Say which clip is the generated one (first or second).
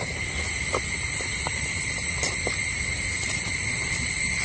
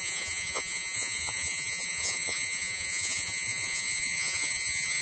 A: second